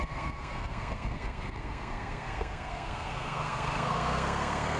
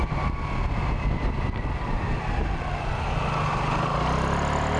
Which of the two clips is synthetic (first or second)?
first